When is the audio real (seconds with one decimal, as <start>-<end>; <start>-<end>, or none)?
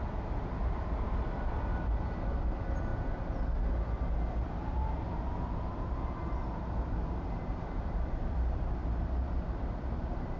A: 2.9-7.2